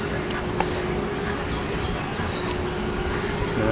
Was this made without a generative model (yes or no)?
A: yes